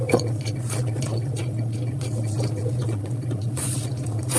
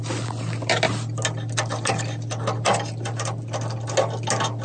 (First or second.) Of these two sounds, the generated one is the first